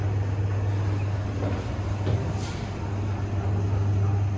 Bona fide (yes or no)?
yes